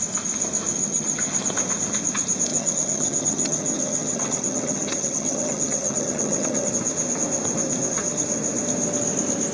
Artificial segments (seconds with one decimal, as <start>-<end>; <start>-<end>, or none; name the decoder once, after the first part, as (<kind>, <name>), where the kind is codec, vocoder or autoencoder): 0.8-1.4 (vocoder, HiFi-GAN); 2.5-6.7